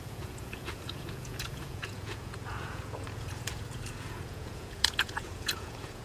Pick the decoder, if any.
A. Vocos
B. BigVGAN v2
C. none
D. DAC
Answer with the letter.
A